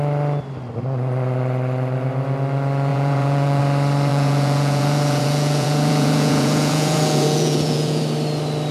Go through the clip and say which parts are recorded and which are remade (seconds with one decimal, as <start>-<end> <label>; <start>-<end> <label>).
0.0-2.9 recorded; 2.9-3.6 remade; 3.6-4.1 recorded; 4.1-8.0 remade; 8.0-8.7 recorded